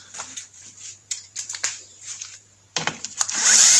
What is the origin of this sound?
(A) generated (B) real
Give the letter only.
A